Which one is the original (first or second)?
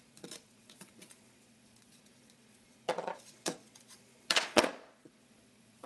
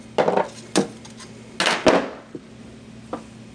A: second